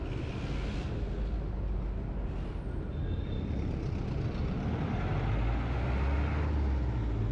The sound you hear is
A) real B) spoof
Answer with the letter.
A